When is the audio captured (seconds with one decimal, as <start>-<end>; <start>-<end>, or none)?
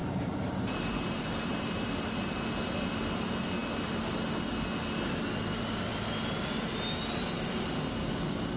2.3-8.6